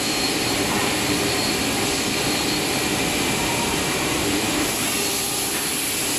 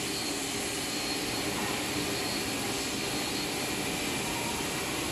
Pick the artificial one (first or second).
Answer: first